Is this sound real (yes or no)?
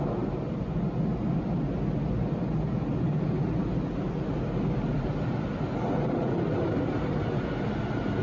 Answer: yes